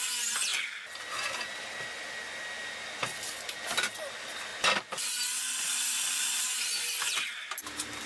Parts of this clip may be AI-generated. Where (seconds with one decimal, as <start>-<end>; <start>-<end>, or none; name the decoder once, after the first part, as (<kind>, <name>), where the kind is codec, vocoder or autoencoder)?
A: none